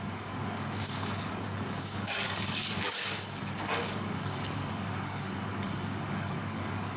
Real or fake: fake